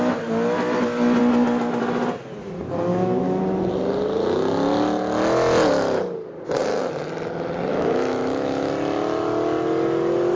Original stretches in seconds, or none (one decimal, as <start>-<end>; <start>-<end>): 0.0-2.9; 3.4-7.7; 8.7-10.4

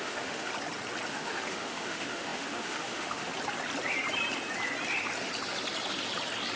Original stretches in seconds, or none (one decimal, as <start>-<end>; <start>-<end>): 0.5-1.1; 3.3-6.6

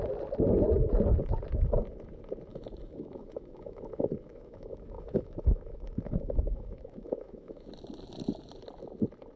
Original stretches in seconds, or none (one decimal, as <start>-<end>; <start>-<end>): 0.0-2.5; 7.7-9.4

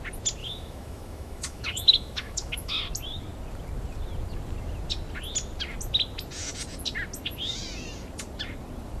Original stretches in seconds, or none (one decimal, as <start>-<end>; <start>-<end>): 0.0-0.4; 2.8-9.0

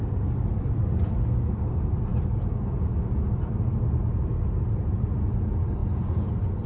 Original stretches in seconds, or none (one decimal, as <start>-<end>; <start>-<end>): 0.0-6.7

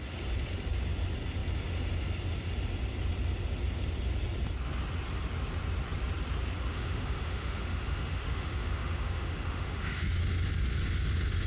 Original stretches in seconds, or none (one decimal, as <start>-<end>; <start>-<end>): 0.0-6.7; 10.2-11.5